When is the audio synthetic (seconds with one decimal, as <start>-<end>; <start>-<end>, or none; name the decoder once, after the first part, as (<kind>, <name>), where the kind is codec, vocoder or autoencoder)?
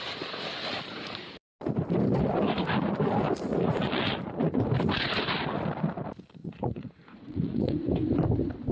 0.9-1.5 (vocoder, Vocos); 3.5-4.6; 6.4-7.9